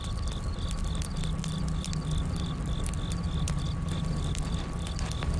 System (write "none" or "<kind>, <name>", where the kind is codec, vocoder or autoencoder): none